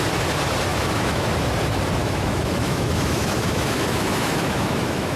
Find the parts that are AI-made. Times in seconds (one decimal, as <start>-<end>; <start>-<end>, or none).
0.7-1.3; 2.0-5.2

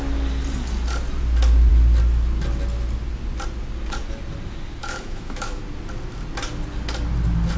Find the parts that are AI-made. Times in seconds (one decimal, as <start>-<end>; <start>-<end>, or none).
4.8-5.6